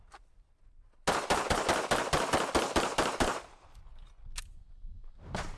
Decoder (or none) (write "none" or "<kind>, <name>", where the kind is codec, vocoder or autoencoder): none